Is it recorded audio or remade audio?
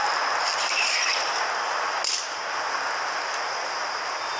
recorded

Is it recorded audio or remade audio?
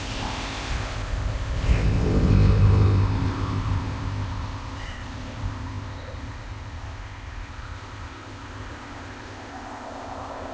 remade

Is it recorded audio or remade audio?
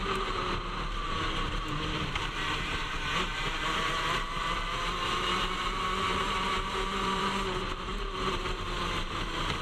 remade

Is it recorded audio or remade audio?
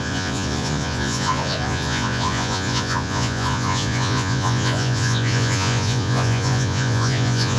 remade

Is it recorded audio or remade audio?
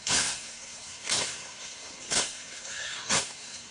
remade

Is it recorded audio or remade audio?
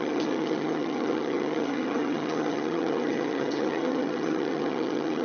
remade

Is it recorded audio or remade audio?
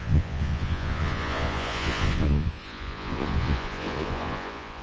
remade